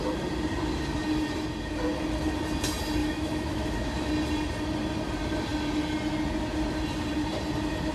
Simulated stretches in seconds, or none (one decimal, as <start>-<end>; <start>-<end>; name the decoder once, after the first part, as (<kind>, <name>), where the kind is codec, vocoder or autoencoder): 3.0-4.1 (autoencoder, DAC-VAE)